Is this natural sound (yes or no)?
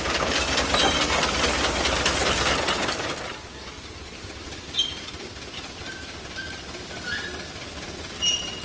yes